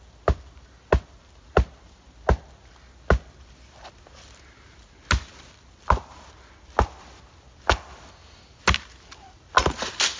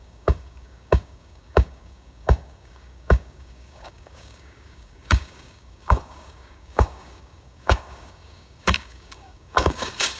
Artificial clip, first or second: second